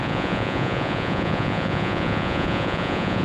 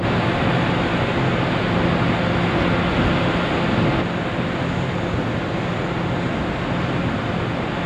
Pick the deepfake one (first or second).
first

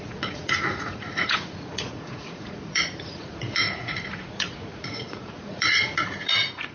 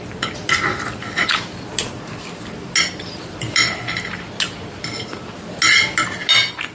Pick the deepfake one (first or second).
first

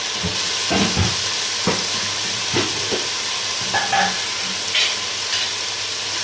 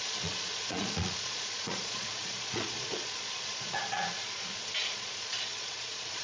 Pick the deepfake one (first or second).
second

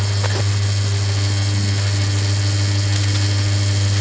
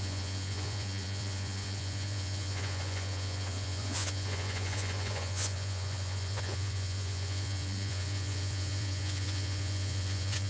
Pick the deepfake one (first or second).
second